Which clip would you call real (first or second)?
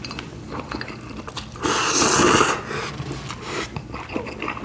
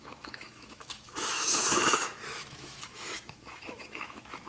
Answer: first